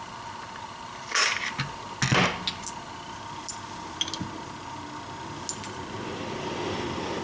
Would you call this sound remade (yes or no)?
no